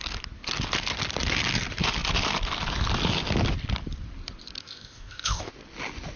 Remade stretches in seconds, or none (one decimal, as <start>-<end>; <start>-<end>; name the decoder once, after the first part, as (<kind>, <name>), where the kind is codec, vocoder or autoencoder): 4.6-5.5 (codec, ZipCodec)